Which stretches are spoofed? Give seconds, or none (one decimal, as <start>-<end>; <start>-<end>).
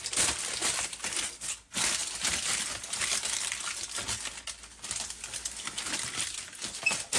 none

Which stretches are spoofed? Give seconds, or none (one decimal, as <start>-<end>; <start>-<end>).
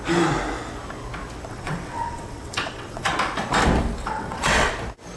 1.5-3.1; 4.0-4.7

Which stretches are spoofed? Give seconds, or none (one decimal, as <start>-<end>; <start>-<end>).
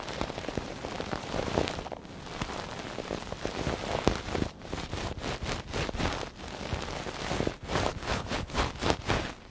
7.9-8.7